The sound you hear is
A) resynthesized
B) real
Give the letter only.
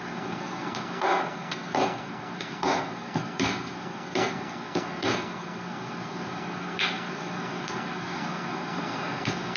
A